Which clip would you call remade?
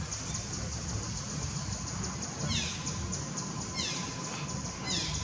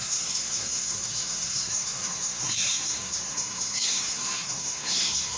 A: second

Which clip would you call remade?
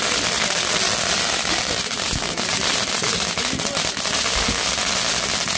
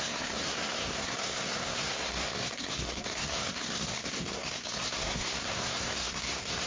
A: second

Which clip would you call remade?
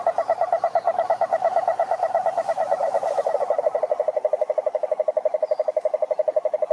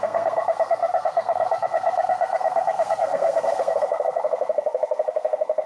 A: second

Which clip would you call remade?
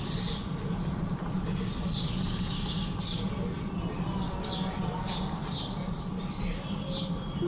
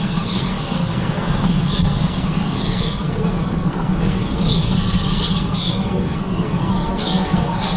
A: second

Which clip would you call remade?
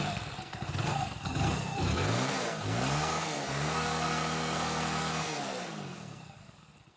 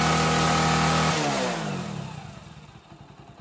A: first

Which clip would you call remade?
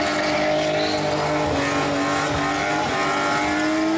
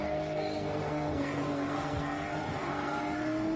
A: second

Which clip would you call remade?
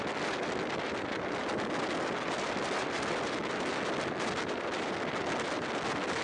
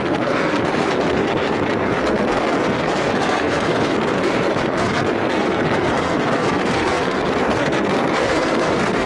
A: second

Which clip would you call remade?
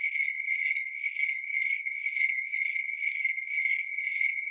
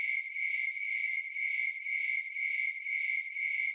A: first